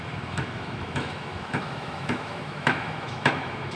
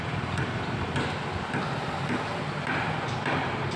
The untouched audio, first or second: second